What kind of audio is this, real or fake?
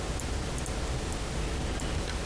real